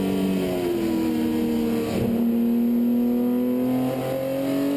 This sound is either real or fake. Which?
real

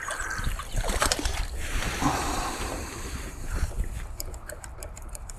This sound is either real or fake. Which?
fake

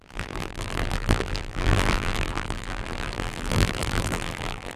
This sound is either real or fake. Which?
fake